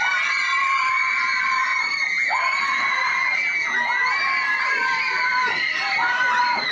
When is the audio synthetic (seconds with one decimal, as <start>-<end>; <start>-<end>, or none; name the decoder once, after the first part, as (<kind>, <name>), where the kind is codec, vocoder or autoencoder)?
0.0-1.7 (vocoder, BigVGAN v2); 4.6-6.7